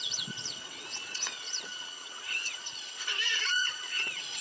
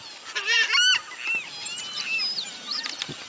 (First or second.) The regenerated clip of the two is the first